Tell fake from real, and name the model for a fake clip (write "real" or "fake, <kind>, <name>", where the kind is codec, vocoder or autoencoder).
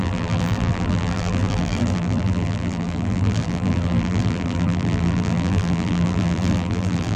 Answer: fake, vocoder, BigVGAN v2